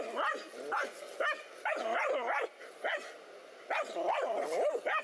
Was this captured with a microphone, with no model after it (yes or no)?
yes